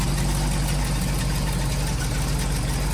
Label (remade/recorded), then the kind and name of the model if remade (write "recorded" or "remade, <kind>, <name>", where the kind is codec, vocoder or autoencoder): recorded